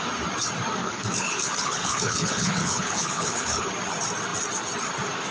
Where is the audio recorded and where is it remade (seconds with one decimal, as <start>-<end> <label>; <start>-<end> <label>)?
0.0-0.8 recorded; 0.8-3.7 remade; 3.7-5.3 recorded